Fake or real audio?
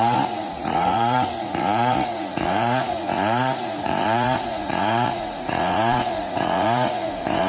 fake